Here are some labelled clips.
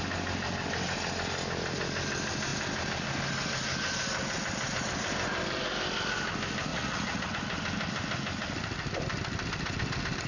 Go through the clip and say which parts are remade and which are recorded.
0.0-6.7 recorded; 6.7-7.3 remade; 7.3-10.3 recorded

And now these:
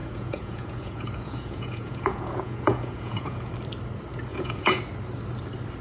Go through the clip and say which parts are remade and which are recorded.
0.0-3.5 remade; 3.5-4.3 recorded; 4.3-4.8 remade; 4.8-5.8 recorded

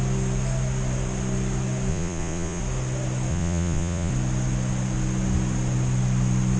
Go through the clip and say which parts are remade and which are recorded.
0.0-1.9 recorded; 1.9-2.6 remade; 2.6-3.3 recorded; 3.3-4.1 remade; 4.1-6.6 recorded

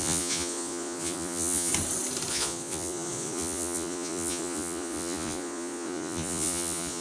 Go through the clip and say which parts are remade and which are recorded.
0.0-1.7 remade; 1.7-2.3 recorded; 2.3-7.0 remade

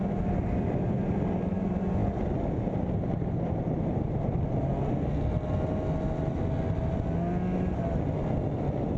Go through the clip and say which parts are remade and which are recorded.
0.0-9.0 recorded

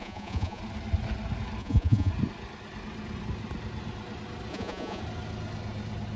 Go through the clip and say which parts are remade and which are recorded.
0.0-0.6 remade; 0.6-1.6 recorded; 1.6-2.1 remade; 2.1-4.5 recorded; 4.5-5.0 remade; 5.0-6.2 recorded

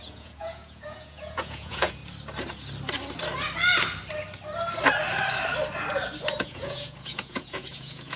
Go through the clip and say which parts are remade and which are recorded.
0.0-2.0 remade; 2.0-6.4 recorded; 6.4-8.2 remade